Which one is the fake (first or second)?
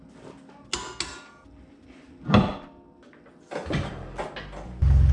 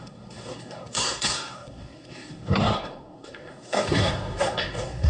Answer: second